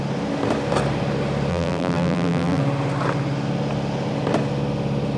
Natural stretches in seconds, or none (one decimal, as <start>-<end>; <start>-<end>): 0.0-1.5; 2.6-5.2